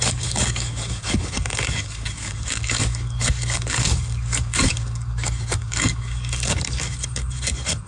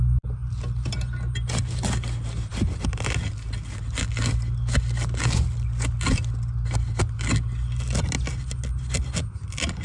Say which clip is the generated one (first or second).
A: first